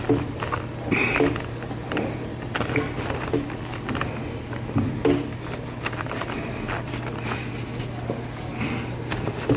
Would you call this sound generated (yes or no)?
no